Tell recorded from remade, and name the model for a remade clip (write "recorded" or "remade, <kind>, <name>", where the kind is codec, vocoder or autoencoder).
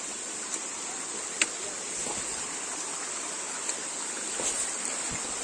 recorded